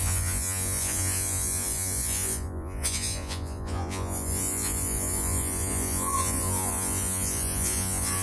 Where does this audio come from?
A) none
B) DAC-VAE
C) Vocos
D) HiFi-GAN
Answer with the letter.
C